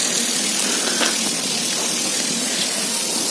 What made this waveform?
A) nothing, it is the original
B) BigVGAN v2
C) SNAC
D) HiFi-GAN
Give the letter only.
A